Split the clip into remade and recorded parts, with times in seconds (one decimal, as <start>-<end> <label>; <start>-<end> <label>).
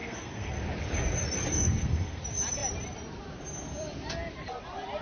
0.0-0.5 remade; 0.5-1.5 recorded; 1.5-2.2 remade; 2.2-5.0 recorded